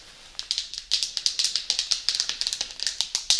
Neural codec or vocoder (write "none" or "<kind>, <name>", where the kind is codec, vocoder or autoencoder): none